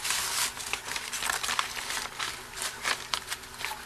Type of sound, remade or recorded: recorded